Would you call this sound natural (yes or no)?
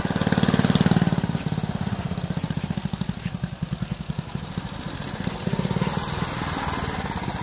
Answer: yes